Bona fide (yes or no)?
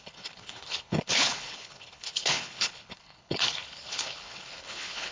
no